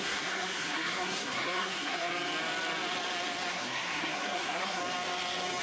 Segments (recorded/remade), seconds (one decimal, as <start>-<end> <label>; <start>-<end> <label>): 0.0-2.1 remade; 2.1-3.5 recorded; 3.5-4.8 remade; 4.8-5.6 recorded